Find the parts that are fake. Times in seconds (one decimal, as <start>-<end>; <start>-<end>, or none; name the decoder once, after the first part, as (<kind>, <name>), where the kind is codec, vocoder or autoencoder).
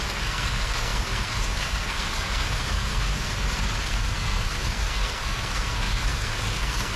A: 0.0-7.0 (codec, SNAC)